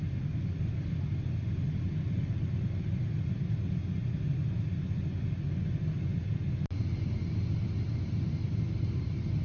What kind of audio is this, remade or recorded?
recorded